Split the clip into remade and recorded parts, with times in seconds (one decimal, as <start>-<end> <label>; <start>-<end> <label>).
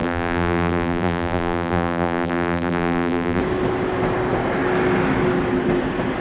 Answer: 0.0-3.4 remade; 3.4-6.2 recorded